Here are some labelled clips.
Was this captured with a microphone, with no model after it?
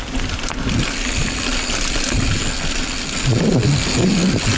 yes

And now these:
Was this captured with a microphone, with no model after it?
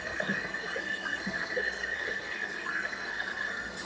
no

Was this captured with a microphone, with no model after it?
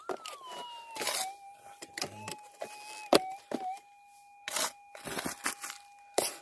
yes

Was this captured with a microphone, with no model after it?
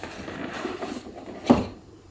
yes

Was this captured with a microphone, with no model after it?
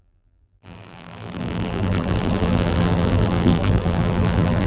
no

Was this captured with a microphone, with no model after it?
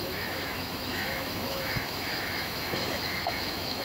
no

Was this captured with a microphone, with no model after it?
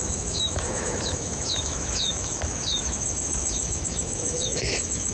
no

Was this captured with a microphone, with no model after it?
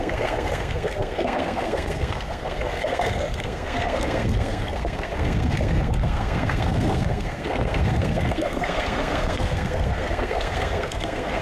no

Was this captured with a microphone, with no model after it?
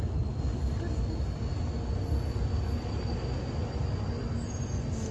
yes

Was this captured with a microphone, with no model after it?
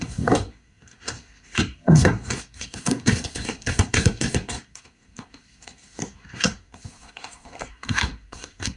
no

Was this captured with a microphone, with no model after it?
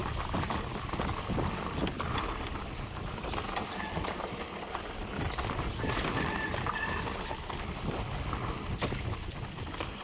yes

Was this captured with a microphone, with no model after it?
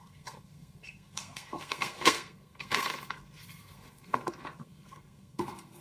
no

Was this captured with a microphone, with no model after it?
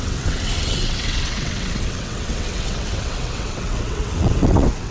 no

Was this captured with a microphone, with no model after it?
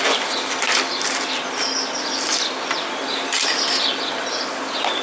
yes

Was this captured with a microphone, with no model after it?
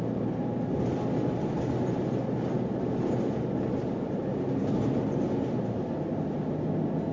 yes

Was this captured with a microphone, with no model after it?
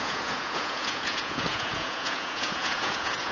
no